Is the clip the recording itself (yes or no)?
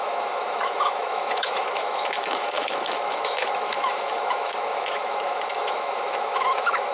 no